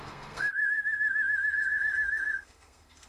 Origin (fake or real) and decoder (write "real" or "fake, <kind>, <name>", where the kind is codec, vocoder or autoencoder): fake, codec, SNAC